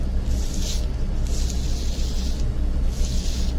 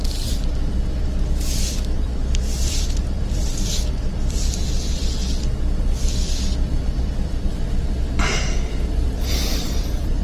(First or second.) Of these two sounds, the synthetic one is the second